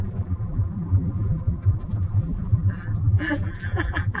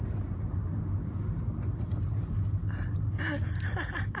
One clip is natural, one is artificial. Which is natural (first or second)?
second